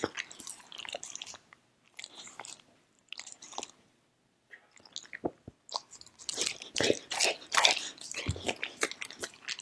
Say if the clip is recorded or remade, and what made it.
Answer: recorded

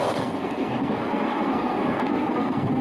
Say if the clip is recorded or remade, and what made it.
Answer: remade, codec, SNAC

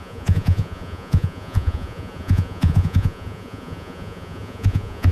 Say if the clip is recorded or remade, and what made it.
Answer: remade, vocoder, Vocos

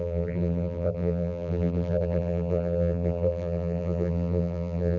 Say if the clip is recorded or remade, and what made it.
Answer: remade, vocoder, BigVGAN v2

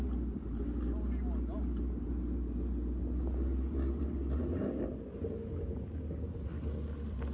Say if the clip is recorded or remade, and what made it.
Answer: recorded